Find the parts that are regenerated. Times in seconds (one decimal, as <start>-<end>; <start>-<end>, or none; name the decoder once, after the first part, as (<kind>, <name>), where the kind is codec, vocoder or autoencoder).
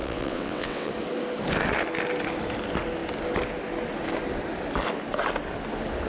0.0-0.9 (vocoder, WaveNeXt)